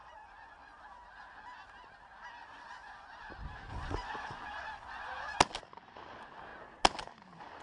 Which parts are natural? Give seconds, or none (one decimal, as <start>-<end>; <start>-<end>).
0.8-2.4; 3.3-3.7; 5.4-7.6